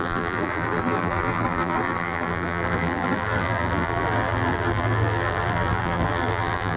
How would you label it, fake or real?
fake